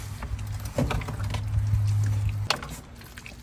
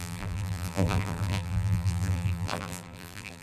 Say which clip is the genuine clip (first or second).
first